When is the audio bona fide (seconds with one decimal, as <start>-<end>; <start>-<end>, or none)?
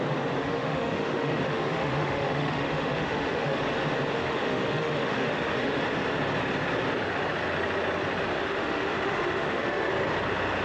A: 0.0-0.4; 3.6-4.2; 5.8-8.4; 9.9-10.6